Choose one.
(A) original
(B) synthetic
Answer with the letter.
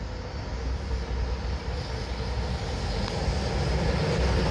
A